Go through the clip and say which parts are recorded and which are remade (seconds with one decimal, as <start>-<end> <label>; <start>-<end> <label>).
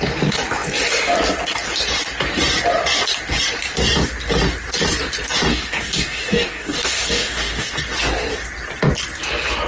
0.0-5.5 recorded; 5.5-7.7 remade; 7.7-9.7 recorded